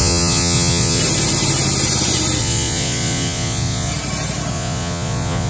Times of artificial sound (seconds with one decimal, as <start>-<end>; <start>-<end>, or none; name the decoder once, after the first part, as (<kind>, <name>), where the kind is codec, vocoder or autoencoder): 0.0-1.0 (vocoder, Vocos); 2.4-3.9; 4.5-5.5